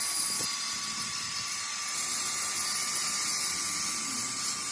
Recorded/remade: recorded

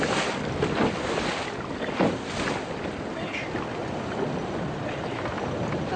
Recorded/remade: recorded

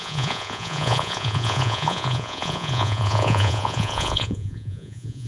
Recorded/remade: remade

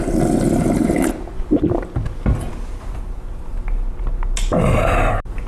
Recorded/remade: recorded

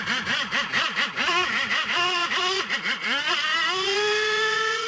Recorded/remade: remade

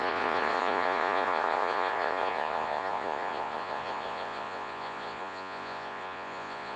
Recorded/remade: remade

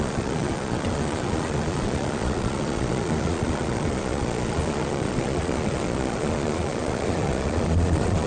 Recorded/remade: remade